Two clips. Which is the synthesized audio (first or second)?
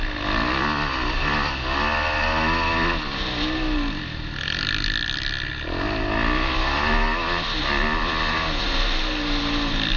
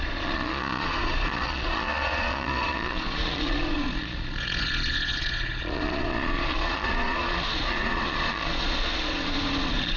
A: second